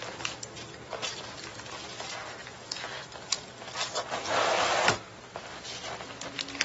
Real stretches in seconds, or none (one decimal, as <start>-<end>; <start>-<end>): 0.0-6.6